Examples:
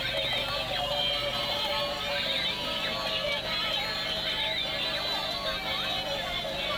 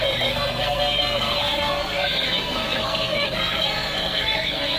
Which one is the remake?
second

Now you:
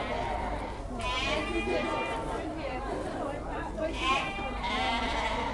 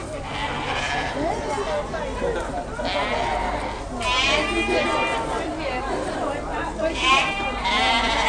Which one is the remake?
first